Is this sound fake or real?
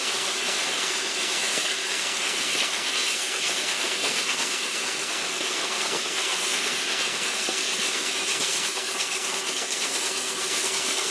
fake